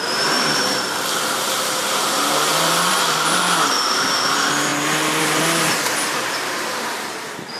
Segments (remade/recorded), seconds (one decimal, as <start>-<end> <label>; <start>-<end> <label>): 0.0-4.7 remade; 4.7-5.2 recorded; 5.2-7.6 remade